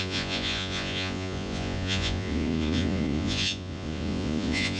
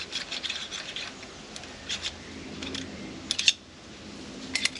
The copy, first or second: first